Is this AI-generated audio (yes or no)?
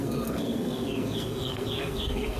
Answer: yes